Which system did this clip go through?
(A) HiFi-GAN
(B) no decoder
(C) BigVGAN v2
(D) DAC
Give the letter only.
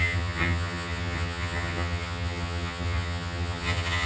A